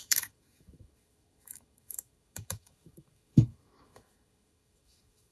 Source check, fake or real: fake